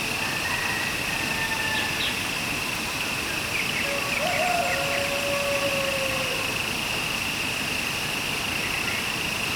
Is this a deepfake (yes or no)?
no